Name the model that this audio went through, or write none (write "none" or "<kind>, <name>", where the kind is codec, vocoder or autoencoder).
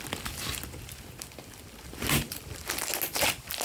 none